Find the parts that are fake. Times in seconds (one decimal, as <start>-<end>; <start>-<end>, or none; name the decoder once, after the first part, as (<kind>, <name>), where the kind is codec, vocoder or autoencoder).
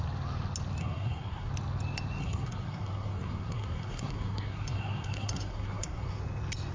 0.8-1.5 (codec, SNAC); 2.2-6.2